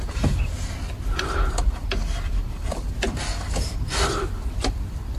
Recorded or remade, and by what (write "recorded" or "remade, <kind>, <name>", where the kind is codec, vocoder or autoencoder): remade, vocoder, BigVGAN v2